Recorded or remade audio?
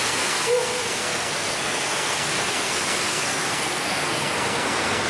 remade